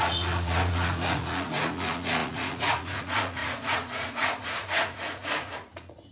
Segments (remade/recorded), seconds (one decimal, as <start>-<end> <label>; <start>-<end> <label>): 0.0-6.1 remade

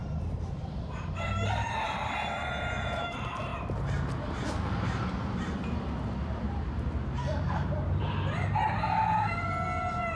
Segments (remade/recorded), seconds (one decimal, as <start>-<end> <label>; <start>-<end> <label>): 0.0-3.5 remade; 3.5-4.5 recorded; 4.5-10.2 remade